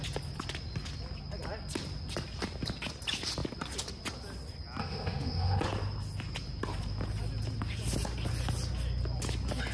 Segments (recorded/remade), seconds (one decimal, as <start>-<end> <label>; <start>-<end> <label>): 0.0-4.8 recorded; 4.8-5.6 remade; 5.6-9.7 recorded